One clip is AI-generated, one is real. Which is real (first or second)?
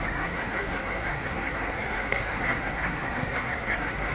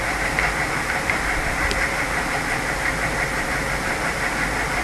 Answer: second